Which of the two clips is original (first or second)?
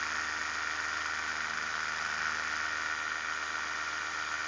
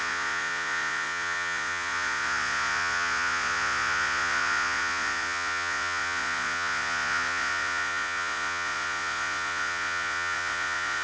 first